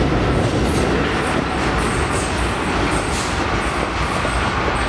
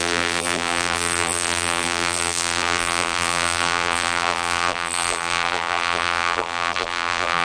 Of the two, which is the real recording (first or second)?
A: first